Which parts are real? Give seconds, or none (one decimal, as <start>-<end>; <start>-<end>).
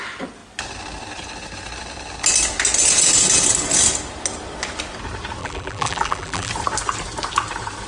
0.0-5.4; 6.5-7.9